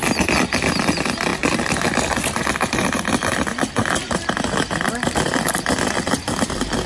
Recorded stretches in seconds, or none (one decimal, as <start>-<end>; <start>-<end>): 0.0-6.9